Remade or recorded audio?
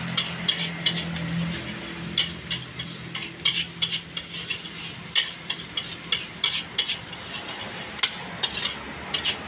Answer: recorded